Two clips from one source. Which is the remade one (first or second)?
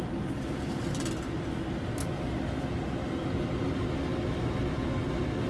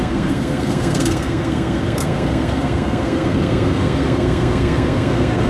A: second